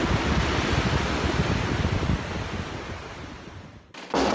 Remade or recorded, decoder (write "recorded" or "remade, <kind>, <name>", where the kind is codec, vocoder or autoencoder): recorded